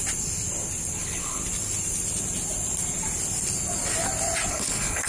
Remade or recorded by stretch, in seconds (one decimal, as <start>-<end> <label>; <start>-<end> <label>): 0.0-0.9 recorded; 0.9-1.4 remade; 1.4-4.5 recorded; 4.5-5.1 remade